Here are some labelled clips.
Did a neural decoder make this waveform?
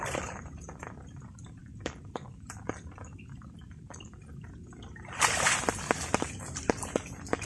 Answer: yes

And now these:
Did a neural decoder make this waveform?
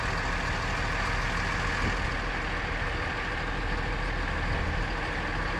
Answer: no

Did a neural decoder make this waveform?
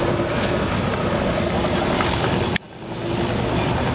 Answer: no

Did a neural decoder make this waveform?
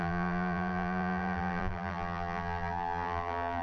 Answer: yes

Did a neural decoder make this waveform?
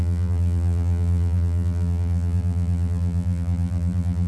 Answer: yes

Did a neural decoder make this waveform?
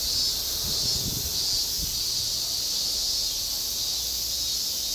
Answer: no